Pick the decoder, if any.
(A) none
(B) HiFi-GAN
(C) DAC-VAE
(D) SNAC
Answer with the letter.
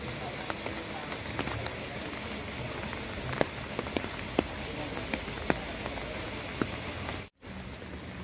A